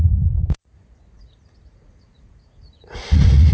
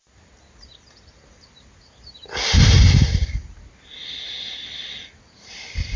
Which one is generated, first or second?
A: first